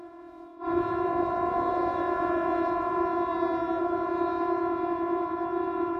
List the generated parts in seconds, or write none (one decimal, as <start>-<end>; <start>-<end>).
0.0-3.3; 3.8-6.0